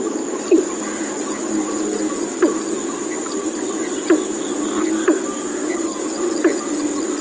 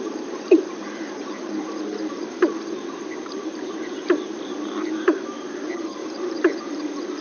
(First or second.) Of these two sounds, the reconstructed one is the second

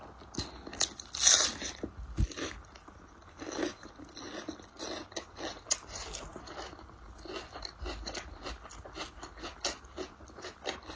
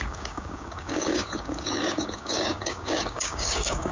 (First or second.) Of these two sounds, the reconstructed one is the second